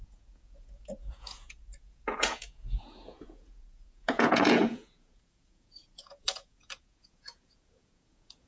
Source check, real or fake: fake